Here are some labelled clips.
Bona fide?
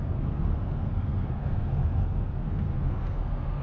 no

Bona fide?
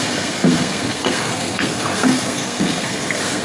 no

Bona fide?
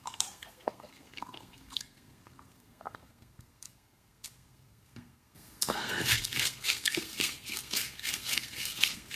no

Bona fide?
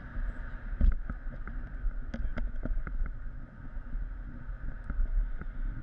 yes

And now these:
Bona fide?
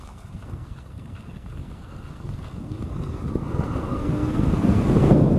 no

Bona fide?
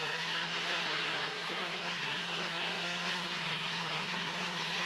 no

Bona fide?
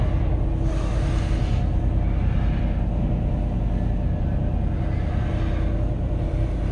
yes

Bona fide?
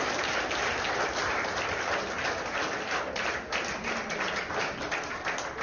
yes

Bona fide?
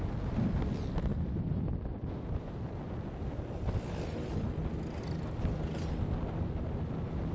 yes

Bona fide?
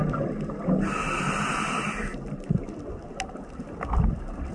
yes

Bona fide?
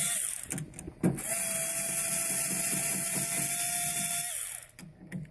yes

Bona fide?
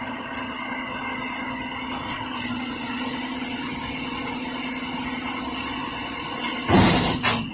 yes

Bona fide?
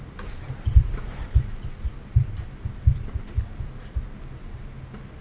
yes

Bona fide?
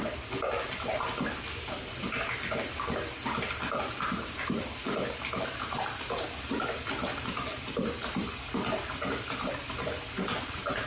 yes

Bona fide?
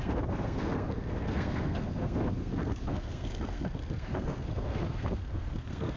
no